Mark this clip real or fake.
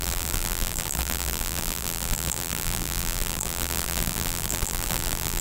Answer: fake